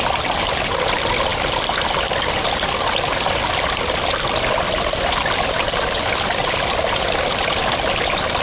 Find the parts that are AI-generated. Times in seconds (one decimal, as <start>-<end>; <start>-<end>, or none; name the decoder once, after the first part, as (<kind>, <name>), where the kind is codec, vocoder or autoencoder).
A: 1.3-2.9 (vocoder, BigVGAN v2)